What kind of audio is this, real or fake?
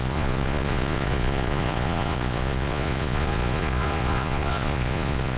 fake